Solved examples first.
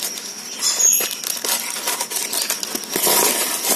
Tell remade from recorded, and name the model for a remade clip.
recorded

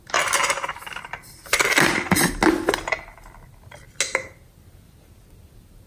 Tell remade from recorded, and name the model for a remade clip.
recorded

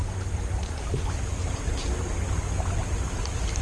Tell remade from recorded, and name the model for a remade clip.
recorded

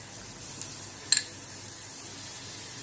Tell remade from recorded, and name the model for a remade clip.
recorded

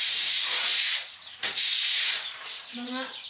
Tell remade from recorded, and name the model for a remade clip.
remade, vocoder, Vocos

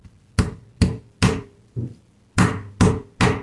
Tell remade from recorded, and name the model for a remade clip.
recorded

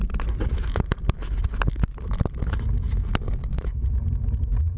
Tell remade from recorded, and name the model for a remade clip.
recorded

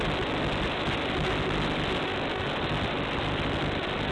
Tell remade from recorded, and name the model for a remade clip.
recorded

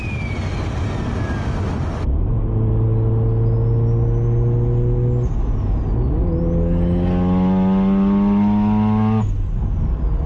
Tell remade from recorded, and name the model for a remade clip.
recorded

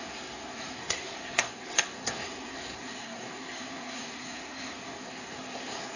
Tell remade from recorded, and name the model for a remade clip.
remade, codec, SNAC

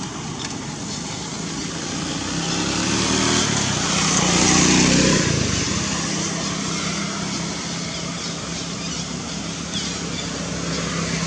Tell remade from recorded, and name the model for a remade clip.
recorded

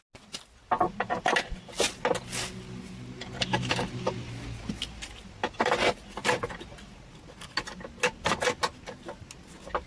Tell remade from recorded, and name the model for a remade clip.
recorded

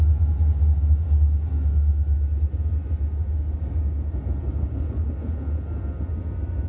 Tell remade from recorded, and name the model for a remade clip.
recorded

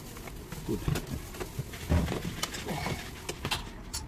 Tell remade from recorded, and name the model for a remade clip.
recorded